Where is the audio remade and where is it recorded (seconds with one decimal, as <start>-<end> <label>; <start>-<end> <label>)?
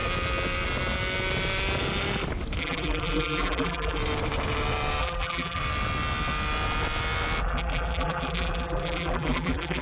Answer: 0.0-2.6 recorded; 2.6-4.0 remade; 4.0-5.0 recorded; 5.0-5.6 remade; 5.6-7.4 recorded; 7.4-9.8 remade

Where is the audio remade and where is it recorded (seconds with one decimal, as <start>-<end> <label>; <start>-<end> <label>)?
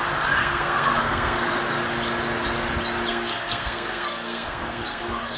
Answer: 0.0-0.4 recorded; 0.4-1.5 remade; 1.5-3.1 recorded; 3.1-5.4 remade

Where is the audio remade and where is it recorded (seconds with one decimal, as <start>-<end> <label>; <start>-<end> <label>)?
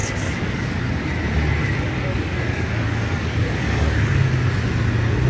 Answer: 0.0-1.0 remade; 1.0-1.6 recorded; 1.6-4.4 remade; 4.4-5.3 recorded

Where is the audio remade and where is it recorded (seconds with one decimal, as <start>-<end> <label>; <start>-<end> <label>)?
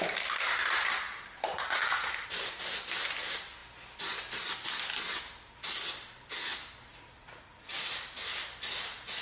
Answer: 0.0-1.5 recorded; 1.5-2.5 remade; 2.5-6.9 recorded; 6.9-8.4 remade; 8.4-9.2 recorded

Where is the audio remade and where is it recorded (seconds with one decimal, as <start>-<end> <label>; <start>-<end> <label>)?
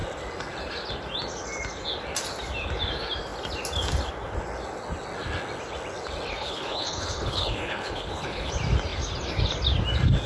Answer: 0.0-6.4 recorded; 6.4-8.5 remade; 8.5-10.3 recorded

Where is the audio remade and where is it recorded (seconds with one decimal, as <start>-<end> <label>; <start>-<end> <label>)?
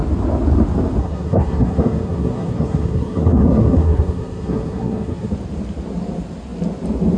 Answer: 0.0-1.0 recorded; 1.0-5.3 remade; 5.3-7.2 recorded